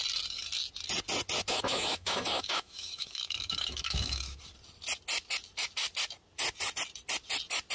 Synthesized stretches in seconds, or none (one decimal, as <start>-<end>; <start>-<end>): 1.5-4.4